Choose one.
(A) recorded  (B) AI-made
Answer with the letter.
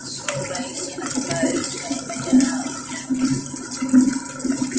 A